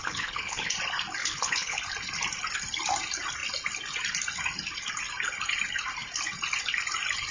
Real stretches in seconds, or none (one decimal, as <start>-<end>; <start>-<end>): 0.7-1.2; 1.8-7.3